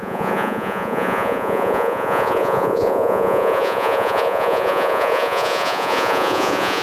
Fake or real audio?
fake